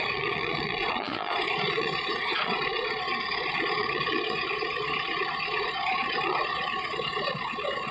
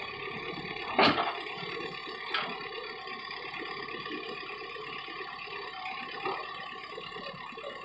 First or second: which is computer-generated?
first